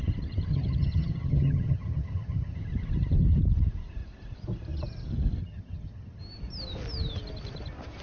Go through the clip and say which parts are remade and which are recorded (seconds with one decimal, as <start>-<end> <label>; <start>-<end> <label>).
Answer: 0.0-0.5 recorded; 0.5-2.6 remade; 2.6-5.4 recorded; 5.4-6.2 remade; 6.2-8.0 recorded